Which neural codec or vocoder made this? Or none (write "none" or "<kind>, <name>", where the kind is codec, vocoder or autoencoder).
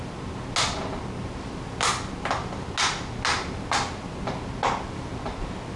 none